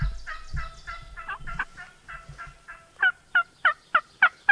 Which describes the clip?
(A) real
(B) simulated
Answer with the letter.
A